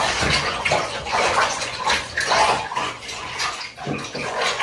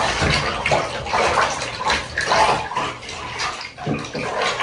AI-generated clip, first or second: first